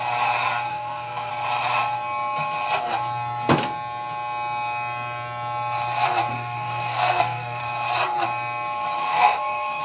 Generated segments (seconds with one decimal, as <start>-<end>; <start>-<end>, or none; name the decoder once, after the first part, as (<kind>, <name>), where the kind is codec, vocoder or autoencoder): 0.7-1.3 (codec, SNAC); 6.3-7.6; 9.0-9.8